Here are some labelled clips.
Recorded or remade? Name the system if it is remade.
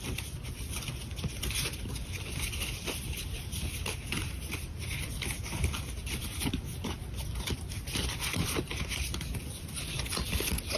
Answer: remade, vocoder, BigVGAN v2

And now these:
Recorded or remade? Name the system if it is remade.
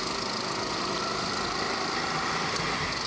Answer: recorded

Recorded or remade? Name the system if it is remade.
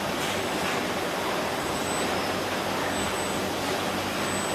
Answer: recorded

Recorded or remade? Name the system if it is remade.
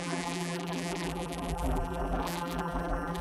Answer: remade, vocoder, BigVGAN v2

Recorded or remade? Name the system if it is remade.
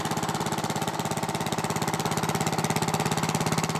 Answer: recorded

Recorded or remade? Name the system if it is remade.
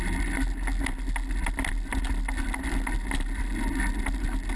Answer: recorded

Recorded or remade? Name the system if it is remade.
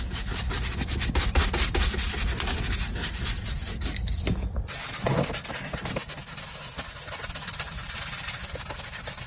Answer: recorded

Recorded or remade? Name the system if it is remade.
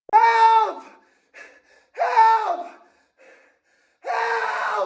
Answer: recorded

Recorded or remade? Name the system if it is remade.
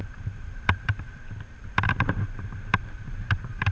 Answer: remade, vocoder, BigVGAN v2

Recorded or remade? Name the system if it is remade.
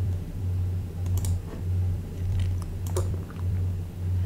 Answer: remade, vocoder, BigVGAN v2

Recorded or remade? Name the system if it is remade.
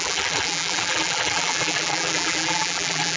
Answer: remade, vocoder, BigVGAN v2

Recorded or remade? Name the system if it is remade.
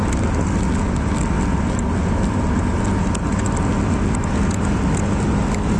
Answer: recorded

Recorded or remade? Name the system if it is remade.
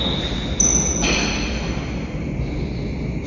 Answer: recorded